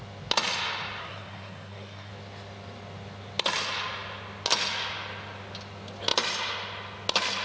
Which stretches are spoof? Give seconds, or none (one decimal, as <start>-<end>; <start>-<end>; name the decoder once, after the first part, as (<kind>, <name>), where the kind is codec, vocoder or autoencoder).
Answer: 1.0-2.1 (codec, SNAC)